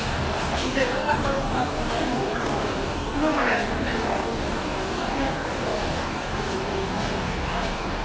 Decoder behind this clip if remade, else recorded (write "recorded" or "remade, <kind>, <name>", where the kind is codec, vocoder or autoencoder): remade, codec, DAC